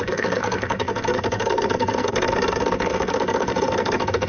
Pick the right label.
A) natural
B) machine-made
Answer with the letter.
B